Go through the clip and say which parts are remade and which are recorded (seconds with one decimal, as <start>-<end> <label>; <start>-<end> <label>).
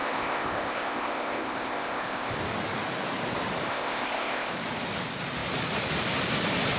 0.0-2.3 remade; 2.3-3.7 recorded; 3.7-4.5 remade; 4.5-6.8 recorded